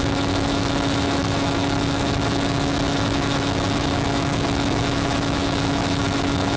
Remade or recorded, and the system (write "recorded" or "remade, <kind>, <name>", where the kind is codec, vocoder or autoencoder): remade, autoencoder, DAC-VAE